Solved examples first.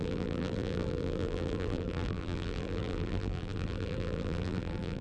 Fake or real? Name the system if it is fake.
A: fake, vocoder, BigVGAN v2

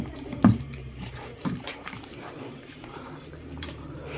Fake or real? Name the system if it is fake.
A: fake, vocoder, BigVGAN v2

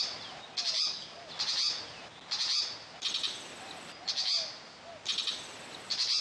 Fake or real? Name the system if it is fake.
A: real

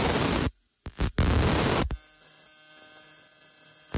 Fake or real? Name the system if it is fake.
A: real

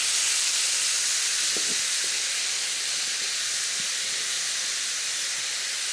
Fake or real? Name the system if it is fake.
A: real